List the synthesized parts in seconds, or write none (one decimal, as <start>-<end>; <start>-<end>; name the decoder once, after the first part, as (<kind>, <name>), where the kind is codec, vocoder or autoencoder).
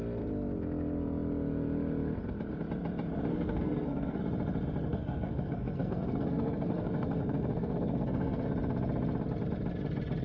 3.3-4.2 (codec, SNAC); 4.9-8.5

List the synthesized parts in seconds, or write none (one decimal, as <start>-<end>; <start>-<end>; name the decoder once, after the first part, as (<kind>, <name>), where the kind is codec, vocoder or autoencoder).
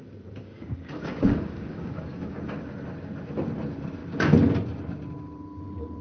0.4-2.7 (codec, DAC)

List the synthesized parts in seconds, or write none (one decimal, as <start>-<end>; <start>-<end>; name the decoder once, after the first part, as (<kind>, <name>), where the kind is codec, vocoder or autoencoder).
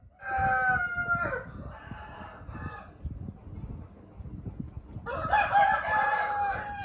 none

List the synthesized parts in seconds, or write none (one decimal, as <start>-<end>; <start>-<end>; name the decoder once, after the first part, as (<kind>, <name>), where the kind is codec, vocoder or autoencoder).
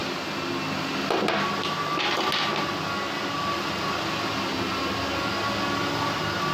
none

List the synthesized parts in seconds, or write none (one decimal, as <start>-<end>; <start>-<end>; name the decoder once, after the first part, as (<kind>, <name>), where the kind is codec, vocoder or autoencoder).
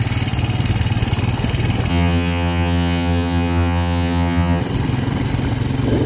1.9-4.6 (vocoder, HiFi-GAN)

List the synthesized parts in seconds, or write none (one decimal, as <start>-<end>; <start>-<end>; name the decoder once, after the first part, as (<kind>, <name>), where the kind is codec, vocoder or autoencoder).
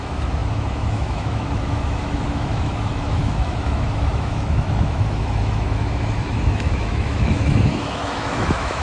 0.0-8.8 (autoencoder, DAC-VAE)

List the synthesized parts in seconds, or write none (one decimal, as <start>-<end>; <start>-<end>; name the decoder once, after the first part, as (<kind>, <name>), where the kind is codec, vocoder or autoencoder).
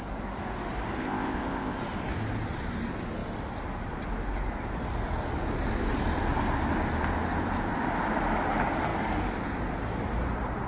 1.0-1.8 (codec, ZipCodec)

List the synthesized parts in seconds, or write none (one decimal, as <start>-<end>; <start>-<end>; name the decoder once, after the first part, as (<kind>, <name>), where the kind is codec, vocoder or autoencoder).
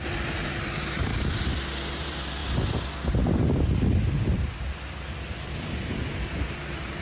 0.0-1.1 (vocoder, BigVGAN v2); 1.9-2.4; 5.9-7.0